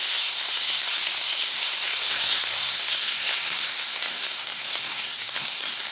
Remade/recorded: remade